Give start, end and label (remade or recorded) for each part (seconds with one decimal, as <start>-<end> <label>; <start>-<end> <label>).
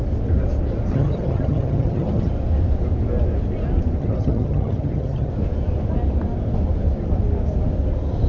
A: 0.0-0.9 recorded; 0.9-2.3 remade; 2.3-4.0 recorded; 4.0-5.3 remade; 5.3-8.3 recorded